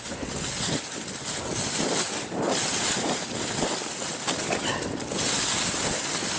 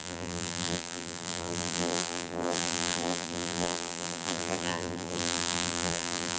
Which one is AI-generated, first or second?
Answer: second